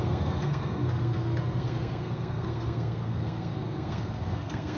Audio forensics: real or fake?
fake